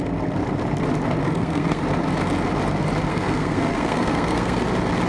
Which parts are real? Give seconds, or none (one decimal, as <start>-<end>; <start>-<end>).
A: 0.0-1.2; 1.8-3.1; 4.6-5.1